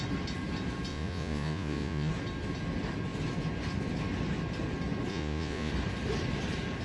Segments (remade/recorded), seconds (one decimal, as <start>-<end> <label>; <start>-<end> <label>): 0.0-0.9 recorded; 0.9-2.1 remade; 2.1-5.1 recorded; 5.1-5.7 remade; 5.7-6.8 recorded